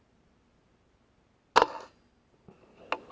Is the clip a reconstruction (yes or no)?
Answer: no